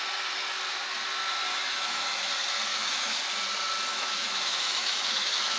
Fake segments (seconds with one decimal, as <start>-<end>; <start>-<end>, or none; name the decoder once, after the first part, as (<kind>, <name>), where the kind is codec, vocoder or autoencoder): 1.5-2.3 (autoencoder, DAC-VAE); 2.7-3.2; 3.9-5.6